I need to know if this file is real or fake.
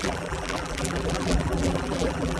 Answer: fake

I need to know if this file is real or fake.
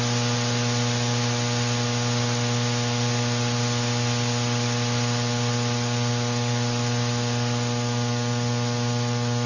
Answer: real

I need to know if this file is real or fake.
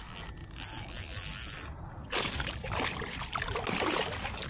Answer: real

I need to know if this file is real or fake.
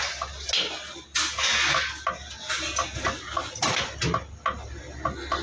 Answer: real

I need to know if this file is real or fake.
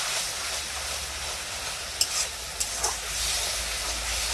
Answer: real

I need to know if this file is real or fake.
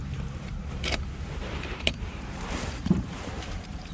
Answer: fake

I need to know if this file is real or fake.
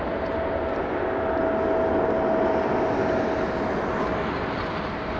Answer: real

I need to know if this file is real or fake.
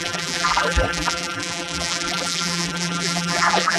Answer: fake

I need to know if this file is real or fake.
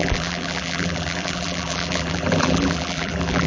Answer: fake